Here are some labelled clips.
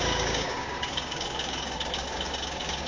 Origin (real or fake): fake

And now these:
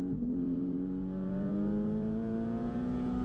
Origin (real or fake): fake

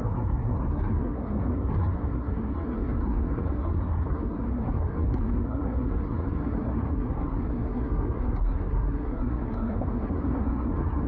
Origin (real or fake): fake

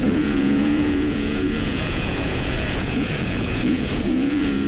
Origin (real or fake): fake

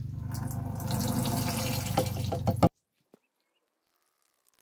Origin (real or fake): real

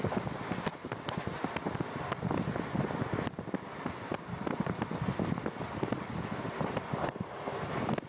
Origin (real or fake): real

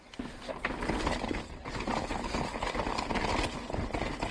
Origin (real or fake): real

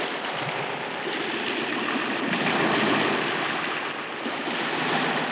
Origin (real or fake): real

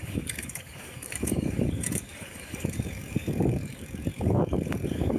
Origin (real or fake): fake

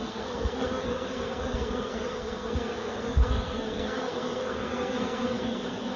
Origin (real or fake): fake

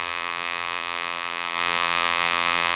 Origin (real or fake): fake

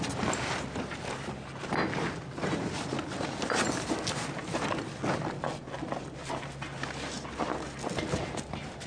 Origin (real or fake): real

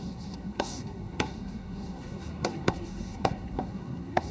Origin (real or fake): fake